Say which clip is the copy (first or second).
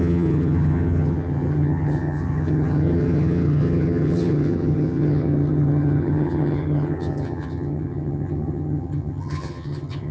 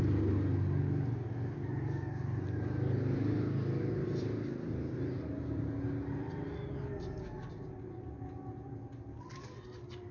first